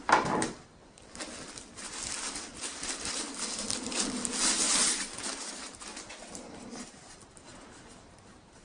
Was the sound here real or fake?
real